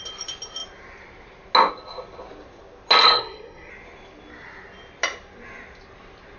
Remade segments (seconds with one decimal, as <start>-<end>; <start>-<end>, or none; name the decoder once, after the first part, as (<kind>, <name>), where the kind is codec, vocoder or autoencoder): 3.0-3.7 (codec, SNAC)